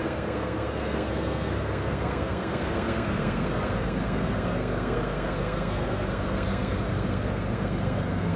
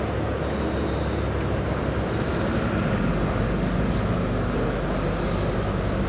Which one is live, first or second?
second